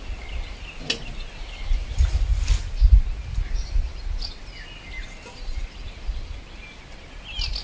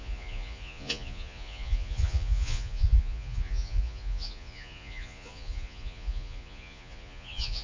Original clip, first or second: first